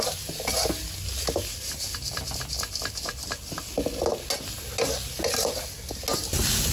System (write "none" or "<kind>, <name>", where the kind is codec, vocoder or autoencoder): none